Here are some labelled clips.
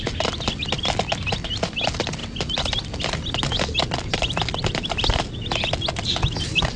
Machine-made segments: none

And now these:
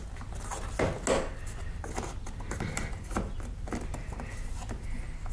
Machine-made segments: none

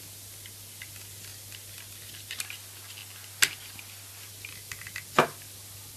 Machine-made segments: none

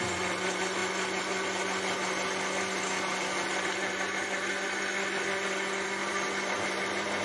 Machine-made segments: 6.0-7.2 (vocoder, BigVGAN v2)

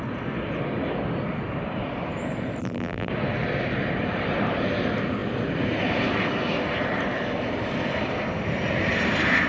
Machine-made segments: 2.6-3.1 (vocoder, BigVGAN v2)

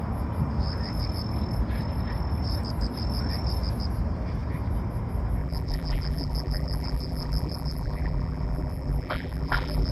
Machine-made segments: 5.4-9.9 (vocoder, BigVGAN v2)

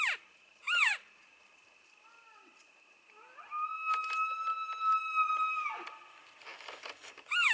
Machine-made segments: 0.0-1.6 (vocoder, BigVGAN v2); 5.3-7.5

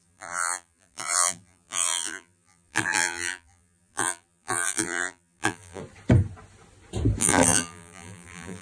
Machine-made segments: 0.0-5.8 (vocoder, BigVGAN v2); 7.2-8.6